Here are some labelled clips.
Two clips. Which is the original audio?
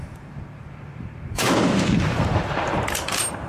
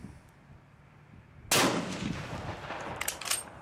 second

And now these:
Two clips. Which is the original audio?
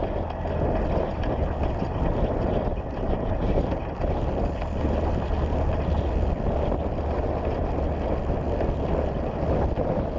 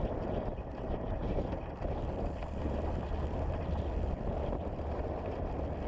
first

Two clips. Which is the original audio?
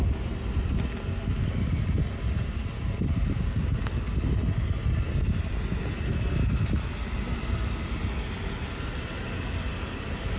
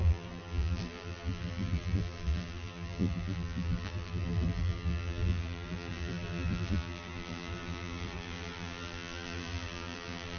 first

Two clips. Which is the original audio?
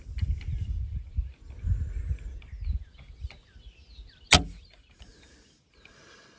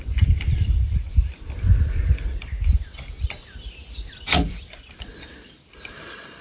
first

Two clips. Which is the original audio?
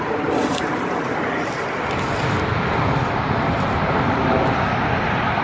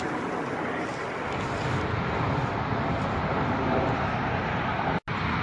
second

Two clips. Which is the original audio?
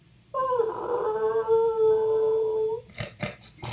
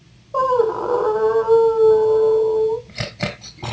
second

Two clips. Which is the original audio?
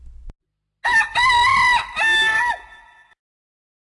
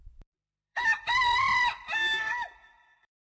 first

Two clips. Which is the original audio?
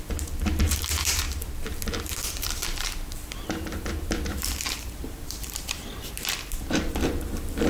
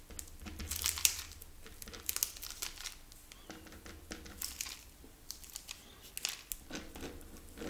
second